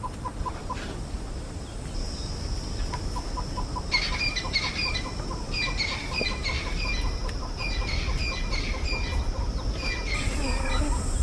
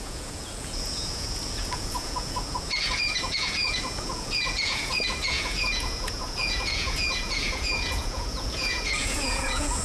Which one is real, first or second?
first